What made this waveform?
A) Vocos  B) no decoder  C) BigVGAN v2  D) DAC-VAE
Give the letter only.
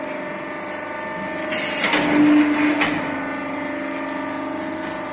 B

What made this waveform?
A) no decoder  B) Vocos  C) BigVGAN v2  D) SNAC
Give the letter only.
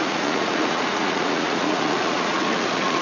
B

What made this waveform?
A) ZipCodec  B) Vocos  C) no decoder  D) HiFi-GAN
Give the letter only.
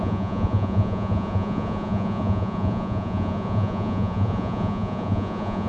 B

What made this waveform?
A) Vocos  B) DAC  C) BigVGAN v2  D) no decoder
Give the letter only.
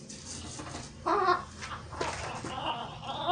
D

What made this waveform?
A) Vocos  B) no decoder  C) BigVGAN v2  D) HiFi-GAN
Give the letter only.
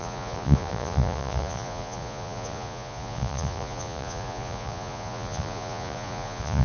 A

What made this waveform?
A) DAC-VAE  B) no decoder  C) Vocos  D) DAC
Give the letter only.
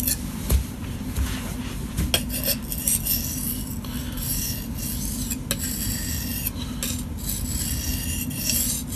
B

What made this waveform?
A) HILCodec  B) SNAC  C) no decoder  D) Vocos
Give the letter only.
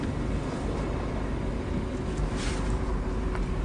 C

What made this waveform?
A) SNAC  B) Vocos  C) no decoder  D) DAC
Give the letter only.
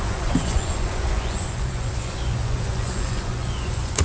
B